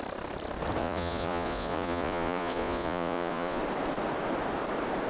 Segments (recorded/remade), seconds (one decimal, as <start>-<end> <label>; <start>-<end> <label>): 0.0-0.8 recorded; 0.8-3.6 remade; 3.6-5.1 recorded